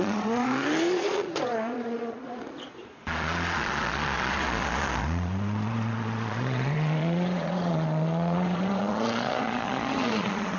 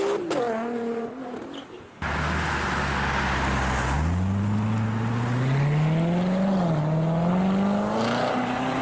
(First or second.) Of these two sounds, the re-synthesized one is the first